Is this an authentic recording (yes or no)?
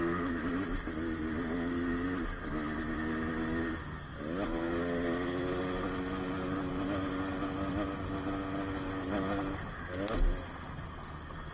yes